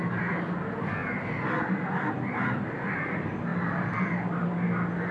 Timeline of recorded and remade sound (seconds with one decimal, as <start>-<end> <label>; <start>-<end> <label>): 0.0-5.1 recorded